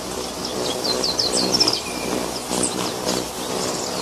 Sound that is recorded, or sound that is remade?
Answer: recorded